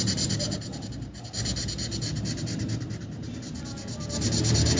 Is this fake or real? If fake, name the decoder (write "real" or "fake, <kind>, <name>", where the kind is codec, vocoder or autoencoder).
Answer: real